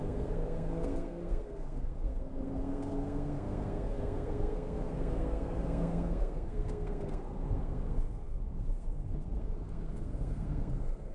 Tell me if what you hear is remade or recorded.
remade